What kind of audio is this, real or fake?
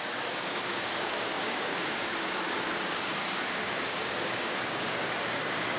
fake